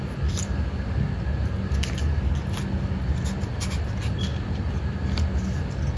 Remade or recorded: recorded